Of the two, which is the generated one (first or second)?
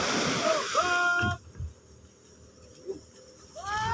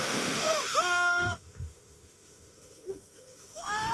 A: second